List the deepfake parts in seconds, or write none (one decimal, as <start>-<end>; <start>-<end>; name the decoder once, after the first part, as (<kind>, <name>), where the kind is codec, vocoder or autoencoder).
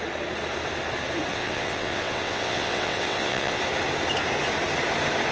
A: 1.3-3.6 (vocoder, WaveNeXt)